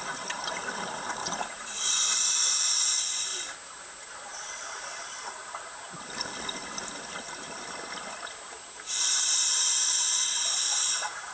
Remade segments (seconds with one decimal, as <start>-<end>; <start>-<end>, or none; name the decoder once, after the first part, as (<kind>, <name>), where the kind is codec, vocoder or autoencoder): 1.2-2.2 (vocoder, BigVGAN v2); 9.1-10.6